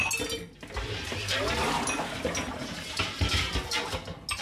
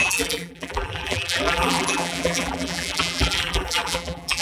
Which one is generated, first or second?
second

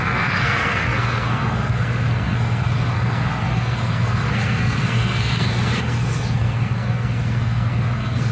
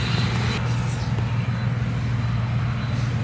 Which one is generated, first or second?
first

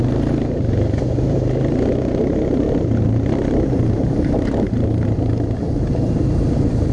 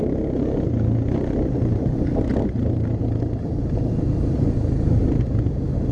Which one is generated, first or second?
first